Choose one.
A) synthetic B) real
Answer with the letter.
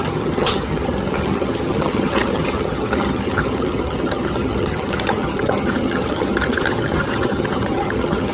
A